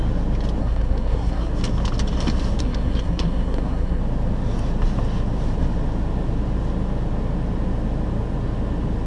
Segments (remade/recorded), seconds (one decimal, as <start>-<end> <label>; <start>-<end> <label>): 0.0-0.6 recorded; 0.6-1.5 remade; 1.5-2.6 recorded; 2.6-4.0 remade; 4.0-9.1 recorded